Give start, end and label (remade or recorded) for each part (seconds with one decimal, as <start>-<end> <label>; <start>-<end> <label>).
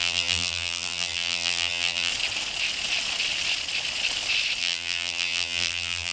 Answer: 0.0-2.1 remade; 2.1-4.6 recorded; 4.6-6.1 remade